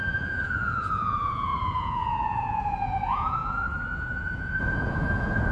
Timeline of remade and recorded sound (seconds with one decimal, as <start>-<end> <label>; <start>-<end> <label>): 0.0-5.5 remade